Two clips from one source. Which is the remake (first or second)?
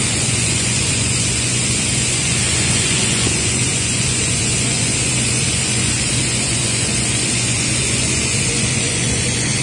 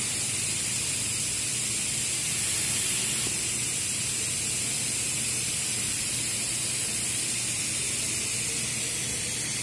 first